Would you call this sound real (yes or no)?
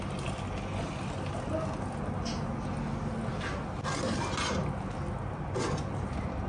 yes